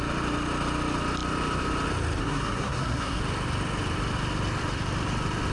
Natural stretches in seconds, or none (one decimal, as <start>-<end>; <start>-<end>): 0.0-2.2; 3.2-5.5